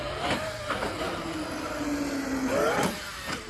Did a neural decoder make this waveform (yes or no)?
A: no